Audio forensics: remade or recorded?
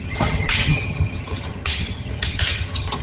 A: remade